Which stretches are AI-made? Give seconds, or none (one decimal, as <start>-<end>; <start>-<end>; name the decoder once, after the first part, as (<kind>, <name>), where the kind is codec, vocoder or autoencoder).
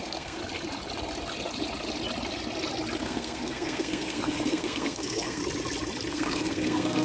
0.0-0.4 (codec, SNAC); 3.0-5.4; 6.1-7.0